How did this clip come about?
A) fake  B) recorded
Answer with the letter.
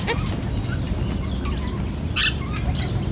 B